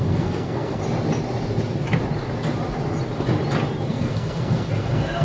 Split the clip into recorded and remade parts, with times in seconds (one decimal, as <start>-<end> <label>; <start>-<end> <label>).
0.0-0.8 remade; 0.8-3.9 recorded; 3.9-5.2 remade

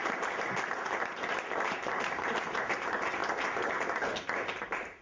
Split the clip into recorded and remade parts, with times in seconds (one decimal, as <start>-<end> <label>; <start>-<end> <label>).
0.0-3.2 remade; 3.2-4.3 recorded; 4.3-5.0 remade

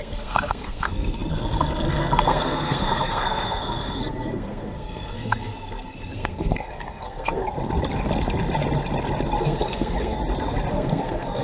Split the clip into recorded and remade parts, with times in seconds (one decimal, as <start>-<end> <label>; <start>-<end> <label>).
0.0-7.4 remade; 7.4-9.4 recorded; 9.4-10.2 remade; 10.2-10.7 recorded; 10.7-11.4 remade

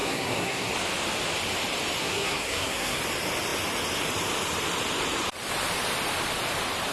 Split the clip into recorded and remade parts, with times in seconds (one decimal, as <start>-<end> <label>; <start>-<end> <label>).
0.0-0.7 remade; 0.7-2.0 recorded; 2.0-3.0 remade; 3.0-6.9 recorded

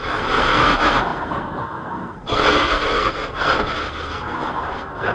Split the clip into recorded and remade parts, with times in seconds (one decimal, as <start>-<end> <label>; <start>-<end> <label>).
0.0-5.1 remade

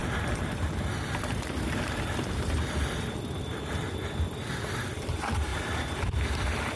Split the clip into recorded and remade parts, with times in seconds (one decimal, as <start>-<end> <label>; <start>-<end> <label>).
0.0-0.7 recorded; 0.7-6.8 remade